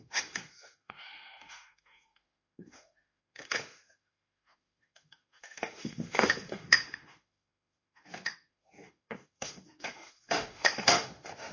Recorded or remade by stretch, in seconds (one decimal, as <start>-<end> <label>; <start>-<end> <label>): 0.0-11.5 remade

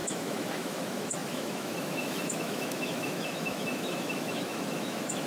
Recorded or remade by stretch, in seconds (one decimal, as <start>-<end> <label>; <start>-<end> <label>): 0.0-5.3 remade

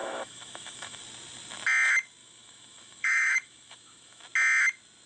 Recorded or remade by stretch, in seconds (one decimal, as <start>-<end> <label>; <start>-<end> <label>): 0.0-1.0 remade; 1.0-2.2 recorded; 2.2-4.2 remade; 4.2-5.1 recorded

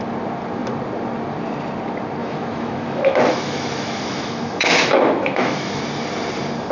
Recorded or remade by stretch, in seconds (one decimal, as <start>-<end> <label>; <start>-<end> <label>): 0.0-2.2 recorded; 2.2-5.8 remade; 5.8-6.7 recorded